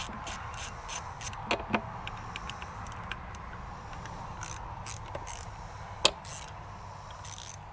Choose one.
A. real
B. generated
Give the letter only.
A